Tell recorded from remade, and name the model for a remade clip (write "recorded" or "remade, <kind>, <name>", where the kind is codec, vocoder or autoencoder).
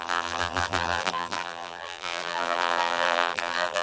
remade, vocoder, BigVGAN v2